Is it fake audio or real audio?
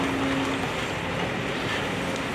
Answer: real